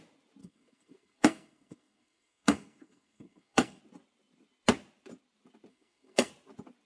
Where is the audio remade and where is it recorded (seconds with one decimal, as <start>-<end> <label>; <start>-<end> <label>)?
0.0-0.4 recorded; 0.4-3.8 remade; 3.8-5.7 recorded; 5.7-6.3 remade; 6.3-6.9 recorded